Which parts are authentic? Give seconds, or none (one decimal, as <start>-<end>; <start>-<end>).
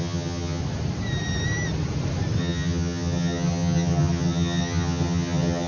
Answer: 0.6-2.4